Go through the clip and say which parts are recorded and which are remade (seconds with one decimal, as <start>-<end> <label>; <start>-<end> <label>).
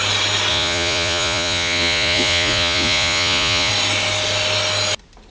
0.0-0.5 recorded; 0.5-3.7 remade; 3.7-5.3 recorded